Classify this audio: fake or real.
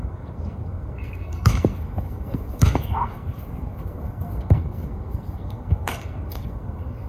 fake